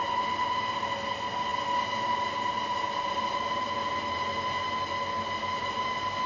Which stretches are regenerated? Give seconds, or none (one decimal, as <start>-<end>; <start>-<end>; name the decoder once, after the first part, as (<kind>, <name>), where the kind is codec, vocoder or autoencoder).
none